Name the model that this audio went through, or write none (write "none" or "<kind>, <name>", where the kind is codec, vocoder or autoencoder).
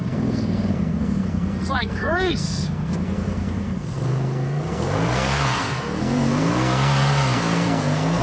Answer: codec, SNAC